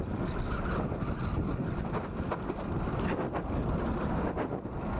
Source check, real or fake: real